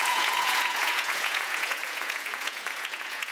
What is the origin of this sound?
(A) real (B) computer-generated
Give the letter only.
B